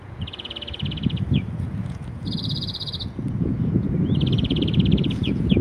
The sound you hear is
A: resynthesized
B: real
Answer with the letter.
A